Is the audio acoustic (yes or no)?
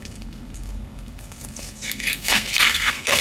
no